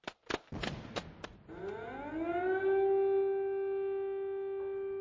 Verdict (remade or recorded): recorded